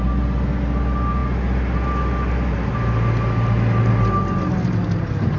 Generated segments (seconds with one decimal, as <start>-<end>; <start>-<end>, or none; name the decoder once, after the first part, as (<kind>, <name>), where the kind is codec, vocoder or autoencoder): none